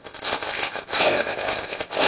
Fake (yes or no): yes